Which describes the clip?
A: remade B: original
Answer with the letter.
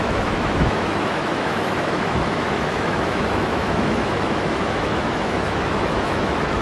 A